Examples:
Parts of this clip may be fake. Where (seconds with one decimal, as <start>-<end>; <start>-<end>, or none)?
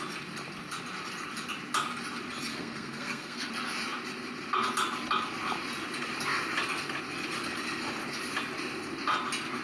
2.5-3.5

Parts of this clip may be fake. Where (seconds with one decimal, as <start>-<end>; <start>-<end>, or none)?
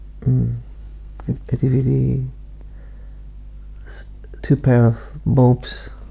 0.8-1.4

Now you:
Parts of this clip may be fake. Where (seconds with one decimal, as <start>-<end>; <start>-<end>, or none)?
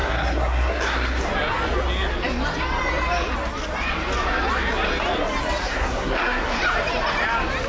0.0-1.3; 5.7-6.6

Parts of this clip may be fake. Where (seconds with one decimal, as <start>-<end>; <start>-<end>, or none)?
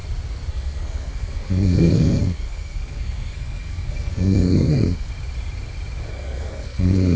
0.5-5.1; 6.1-7.2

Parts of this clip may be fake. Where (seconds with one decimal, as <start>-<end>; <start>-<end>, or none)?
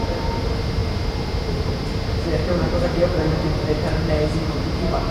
none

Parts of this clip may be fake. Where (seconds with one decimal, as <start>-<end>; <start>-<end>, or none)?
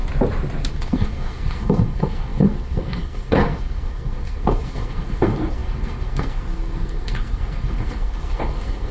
0.7-8.9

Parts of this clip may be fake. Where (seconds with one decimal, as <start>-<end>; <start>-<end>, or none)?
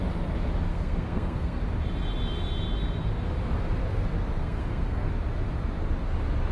0.7-1.6; 4.4-5.1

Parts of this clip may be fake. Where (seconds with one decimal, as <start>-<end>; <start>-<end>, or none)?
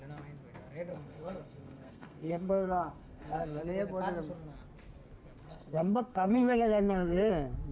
0.9-3.6; 5.4-7.3